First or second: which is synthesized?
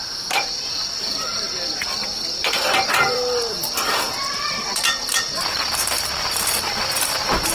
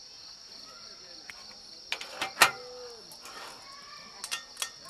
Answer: first